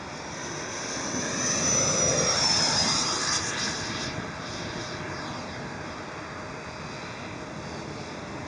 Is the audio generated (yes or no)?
no